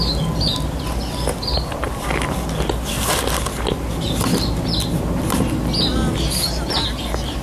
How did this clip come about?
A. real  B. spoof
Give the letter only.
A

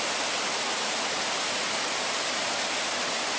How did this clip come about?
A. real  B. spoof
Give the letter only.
A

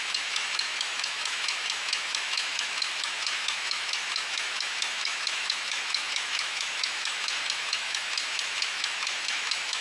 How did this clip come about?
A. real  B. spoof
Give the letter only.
B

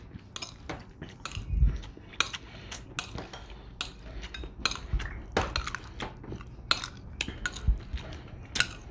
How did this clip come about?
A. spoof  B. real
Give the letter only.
B